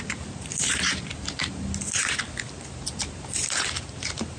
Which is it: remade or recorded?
remade